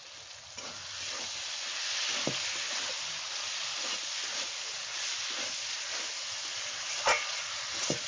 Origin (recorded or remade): recorded